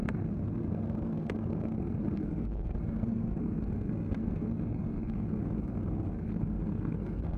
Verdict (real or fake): fake